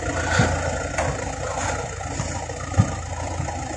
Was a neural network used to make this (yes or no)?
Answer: no